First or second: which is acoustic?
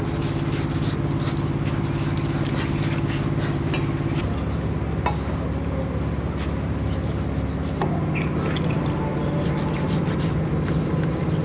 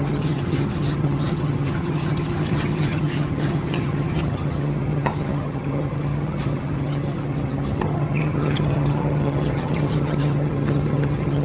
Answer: first